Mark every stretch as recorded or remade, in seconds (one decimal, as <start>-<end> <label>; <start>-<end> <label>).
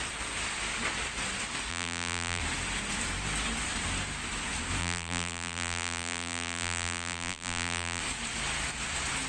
0.0-1.7 recorded; 1.7-2.4 remade; 2.4-4.8 recorded; 4.8-8.0 remade; 8.0-9.3 recorded